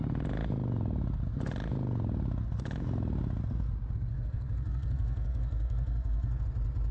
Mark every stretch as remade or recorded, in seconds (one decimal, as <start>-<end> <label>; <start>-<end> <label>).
0.0-4.1 recorded; 4.1-6.4 remade; 6.4-6.9 recorded

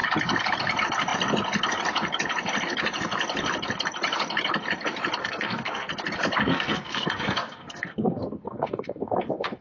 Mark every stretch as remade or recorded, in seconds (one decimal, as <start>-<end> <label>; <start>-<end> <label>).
0.0-5.2 recorded; 5.2-5.9 remade; 5.9-6.5 recorded; 6.5-9.6 remade

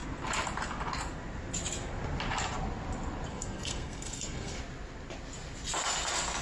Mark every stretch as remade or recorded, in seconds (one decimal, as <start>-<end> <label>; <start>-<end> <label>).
0.0-3.3 recorded; 3.3-4.6 remade; 4.6-6.4 recorded